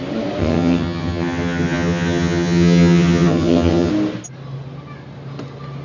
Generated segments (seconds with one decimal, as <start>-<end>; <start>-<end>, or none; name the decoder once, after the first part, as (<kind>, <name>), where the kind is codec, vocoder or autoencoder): 0.4-3.9 (vocoder, HiFi-GAN)